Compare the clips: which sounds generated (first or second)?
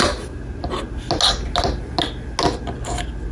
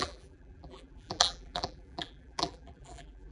second